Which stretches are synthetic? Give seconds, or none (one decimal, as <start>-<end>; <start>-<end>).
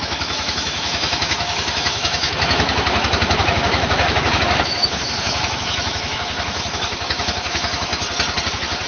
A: 0.0-7.9; 8.5-8.9